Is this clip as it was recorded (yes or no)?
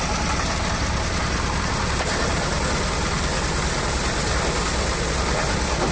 yes